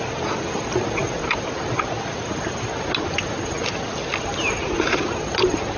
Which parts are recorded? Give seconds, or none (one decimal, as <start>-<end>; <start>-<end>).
0.0-5.8